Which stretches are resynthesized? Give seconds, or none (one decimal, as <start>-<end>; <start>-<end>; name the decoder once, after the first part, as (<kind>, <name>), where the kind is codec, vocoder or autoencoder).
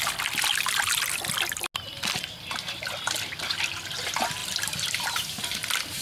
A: 4.4-6.0 (vocoder, BigVGAN v2)